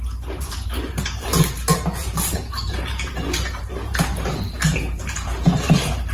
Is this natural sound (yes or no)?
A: no